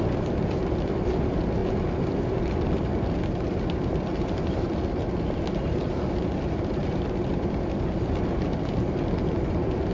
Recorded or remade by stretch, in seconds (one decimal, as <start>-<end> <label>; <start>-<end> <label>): 0.0-9.9 recorded